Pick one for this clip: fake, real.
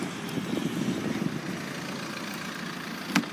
real